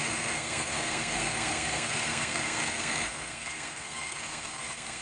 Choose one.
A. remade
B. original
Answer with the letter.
A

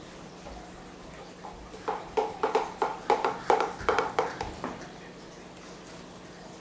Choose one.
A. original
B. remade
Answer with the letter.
A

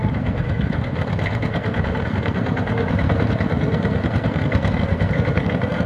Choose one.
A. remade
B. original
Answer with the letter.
A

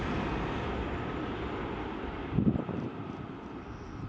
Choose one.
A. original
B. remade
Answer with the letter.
A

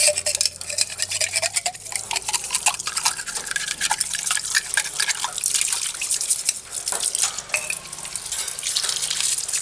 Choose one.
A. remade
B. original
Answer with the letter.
B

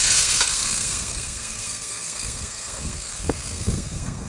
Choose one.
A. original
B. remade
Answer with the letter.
B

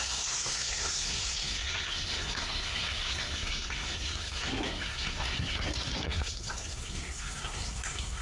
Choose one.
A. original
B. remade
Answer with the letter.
B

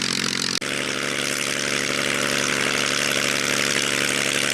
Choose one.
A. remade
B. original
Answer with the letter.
B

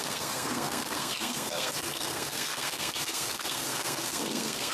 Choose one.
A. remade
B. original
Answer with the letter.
A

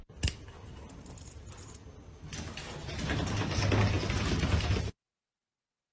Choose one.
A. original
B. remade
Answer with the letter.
A